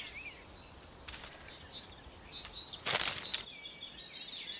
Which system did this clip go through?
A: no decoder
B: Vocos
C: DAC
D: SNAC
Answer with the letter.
A